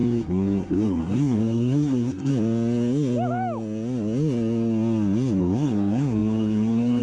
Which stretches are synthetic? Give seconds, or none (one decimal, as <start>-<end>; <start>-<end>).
0.0-2.3; 5.4-7.0